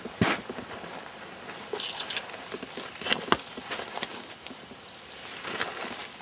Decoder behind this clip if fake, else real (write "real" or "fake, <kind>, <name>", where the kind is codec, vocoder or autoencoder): real